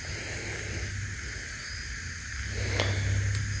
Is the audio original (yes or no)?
yes